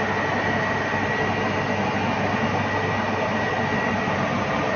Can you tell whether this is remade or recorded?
recorded